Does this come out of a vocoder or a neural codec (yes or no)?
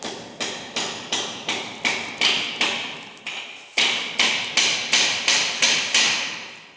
no